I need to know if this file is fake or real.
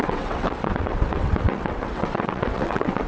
fake